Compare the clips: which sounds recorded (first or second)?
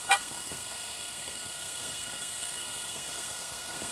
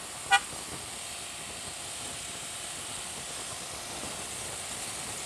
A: second